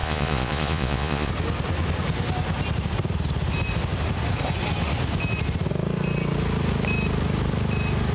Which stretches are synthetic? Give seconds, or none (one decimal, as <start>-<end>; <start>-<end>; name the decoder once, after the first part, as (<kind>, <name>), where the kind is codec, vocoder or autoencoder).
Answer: 0.0-1.3 (vocoder, Vocos)